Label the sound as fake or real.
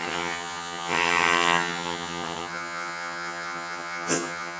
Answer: fake